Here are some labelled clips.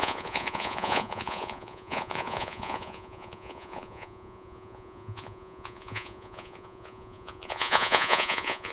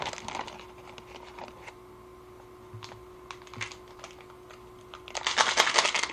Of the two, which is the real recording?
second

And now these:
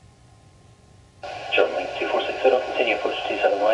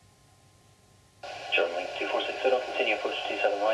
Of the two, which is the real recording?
second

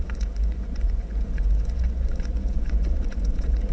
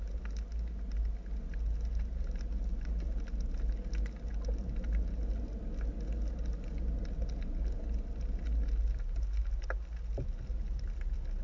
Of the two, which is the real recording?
second